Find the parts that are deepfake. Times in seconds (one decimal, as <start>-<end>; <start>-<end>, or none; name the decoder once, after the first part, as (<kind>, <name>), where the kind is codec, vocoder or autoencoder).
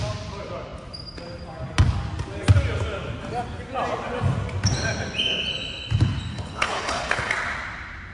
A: 6.3-7.3 (codec, HILCodec)